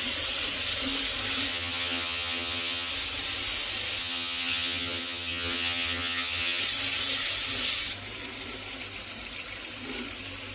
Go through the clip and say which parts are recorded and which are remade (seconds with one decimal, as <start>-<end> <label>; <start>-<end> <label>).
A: 0.0-1.5 recorded; 1.5-2.9 remade; 2.9-4.0 recorded; 4.0-6.6 remade; 6.6-10.5 recorded